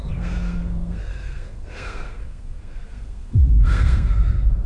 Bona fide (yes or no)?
no